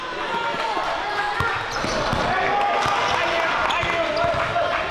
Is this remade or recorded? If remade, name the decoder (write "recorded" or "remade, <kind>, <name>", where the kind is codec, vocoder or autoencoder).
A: recorded